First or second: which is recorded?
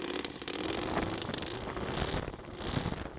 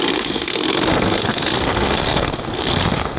first